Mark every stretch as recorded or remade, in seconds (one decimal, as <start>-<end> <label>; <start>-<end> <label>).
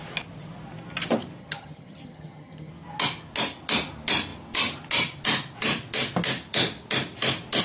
0.0-1.4 recorded; 1.4-2.7 remade; 2.7-7.6 recorded